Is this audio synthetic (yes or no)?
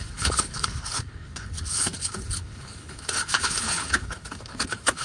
yes